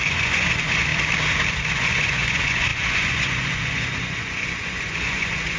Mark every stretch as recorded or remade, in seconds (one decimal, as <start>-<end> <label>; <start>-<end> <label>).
0.0-0.9 remade; 0.9-1.5 recorded; 1.5-5.6 remade